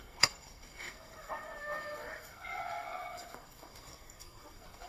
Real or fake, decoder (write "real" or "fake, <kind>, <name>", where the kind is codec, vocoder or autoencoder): fake, codec, SNAC